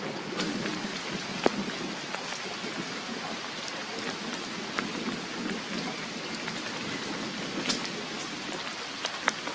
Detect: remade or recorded recorded